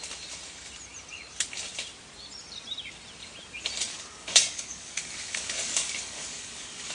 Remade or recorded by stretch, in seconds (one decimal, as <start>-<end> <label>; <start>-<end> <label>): 0.0-3.9 recorded; 3.9-6.9 remade